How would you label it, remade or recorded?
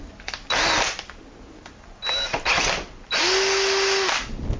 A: recorded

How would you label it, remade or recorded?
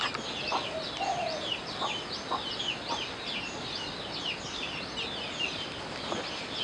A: recorded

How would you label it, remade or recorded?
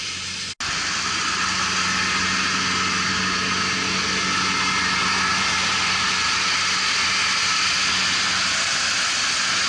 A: recorded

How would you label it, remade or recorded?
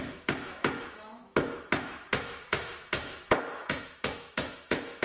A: remade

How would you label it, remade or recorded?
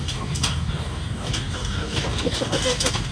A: remade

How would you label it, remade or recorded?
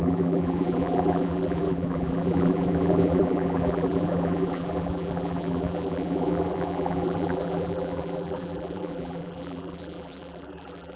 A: remade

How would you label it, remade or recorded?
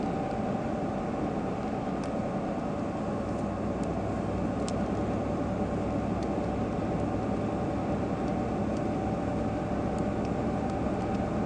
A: recorded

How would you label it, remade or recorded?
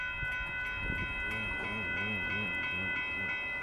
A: recorded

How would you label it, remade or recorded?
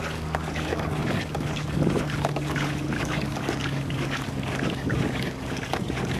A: remade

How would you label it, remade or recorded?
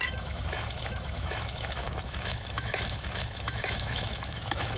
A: remade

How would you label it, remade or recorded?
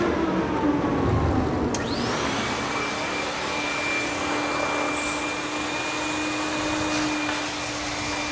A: recorded